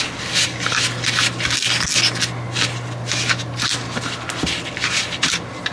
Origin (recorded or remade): recorded